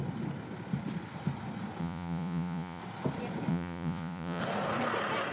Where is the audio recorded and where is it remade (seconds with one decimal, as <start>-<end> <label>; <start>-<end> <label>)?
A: 0.0-1.8 recorded; 1.8-2.8 remade; 2.8-3.5 recorded; 3.5-4.4 remade; 4.4-5.3 recorded